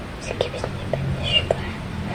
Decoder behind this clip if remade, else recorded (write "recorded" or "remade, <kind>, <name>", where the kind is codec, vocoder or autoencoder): recorded